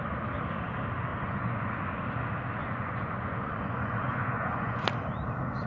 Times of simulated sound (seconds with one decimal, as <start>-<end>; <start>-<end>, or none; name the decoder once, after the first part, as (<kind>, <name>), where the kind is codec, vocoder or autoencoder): 1.1-1.7 (vocoder, Vocos); 2.6-4.9